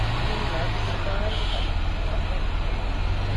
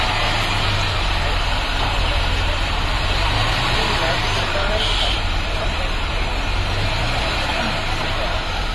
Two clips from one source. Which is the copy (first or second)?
second